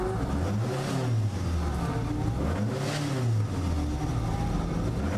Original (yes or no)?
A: yes